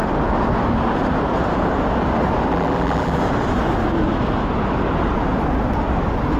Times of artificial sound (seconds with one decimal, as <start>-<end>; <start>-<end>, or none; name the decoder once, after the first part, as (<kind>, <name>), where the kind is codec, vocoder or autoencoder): 2.5-3.2 (vocoder, BigVGAN v2)